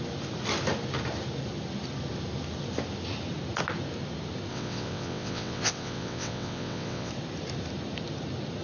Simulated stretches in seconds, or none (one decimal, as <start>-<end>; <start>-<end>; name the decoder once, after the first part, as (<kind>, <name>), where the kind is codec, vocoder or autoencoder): 4.5-7.1 (vocoder, WaveNeXt)